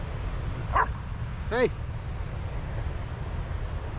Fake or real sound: real